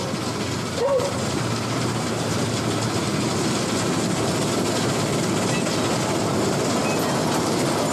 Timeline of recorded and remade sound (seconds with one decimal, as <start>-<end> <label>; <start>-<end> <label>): 0.0-0.9 recorded; 0.9-3.3 remade; 3.3-7.9 recorded

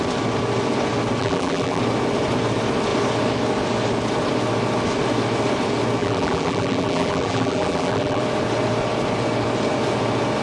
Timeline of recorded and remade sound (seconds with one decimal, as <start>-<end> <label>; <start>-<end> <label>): 0.0-1.2 recorded; 1.2-1.8 remade; 1.8-6.0 recorded; 6.0-8.2 remade; 8.2-10.4 recorded

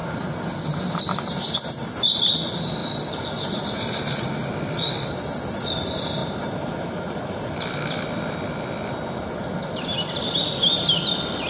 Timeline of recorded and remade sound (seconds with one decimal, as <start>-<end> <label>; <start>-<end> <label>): 0.0-2.8 recorded; 2.8-4.5 remade; 4.5-6.2 recorded; 6.2-7.4 remade; 7.4-11.5 recorded

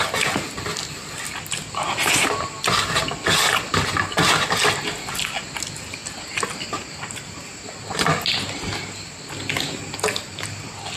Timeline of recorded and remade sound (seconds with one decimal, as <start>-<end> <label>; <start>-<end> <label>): 0.0-11.0 recorded

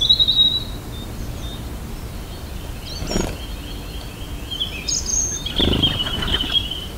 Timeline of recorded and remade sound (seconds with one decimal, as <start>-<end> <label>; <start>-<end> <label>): 0.0-5.1 recorded; 5.1-7.0 remade